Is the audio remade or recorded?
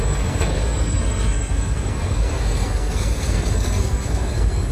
remade